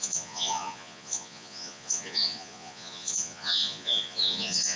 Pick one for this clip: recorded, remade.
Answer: remade